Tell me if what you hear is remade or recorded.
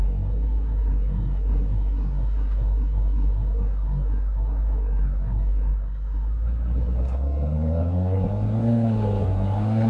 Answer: remade